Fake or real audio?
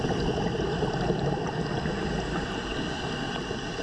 real